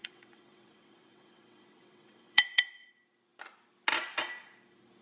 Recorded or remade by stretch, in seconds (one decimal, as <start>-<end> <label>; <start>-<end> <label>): 0.0-2.9 remade; 2.9-5.0 recorded

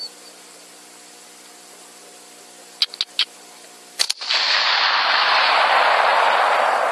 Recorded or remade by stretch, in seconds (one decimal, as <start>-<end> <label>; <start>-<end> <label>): 0.0-6.9 recorded

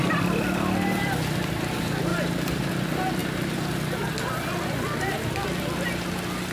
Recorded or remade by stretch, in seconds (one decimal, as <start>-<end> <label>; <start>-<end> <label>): 0.0-3.2 remade; 3.2-4.7 recorded; 4.7-6.5 remade

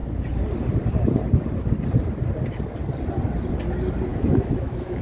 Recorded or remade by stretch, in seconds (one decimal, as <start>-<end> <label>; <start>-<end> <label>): 0.0-4.1 recorded; 4.1-5.0 remade

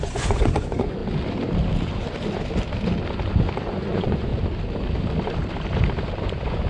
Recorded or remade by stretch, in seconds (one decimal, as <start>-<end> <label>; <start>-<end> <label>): 0.0-1.0 remade; 1.0-3.6 recorded; 3.6-4.3 remade; 4.3-6.2 recorded; 6.2-6.7 remade

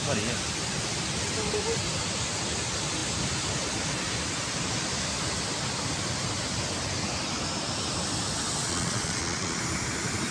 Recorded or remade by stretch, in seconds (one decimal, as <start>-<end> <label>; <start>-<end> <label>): 0.0-8.6 recorded; 8.6-9.6 remade; 9.6-10.3 recorded

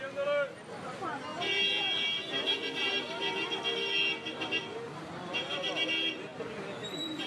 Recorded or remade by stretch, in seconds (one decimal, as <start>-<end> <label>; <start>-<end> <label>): 0.0-7.3 recorded

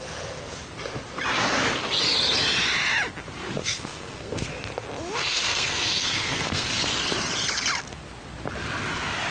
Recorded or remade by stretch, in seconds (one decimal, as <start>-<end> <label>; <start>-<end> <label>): 0.0-3.6 recorded; 3.6-4.5 remade; 4.5-5.2 recorded; 5.2-6.8 remade; 6.8-9.3 recorded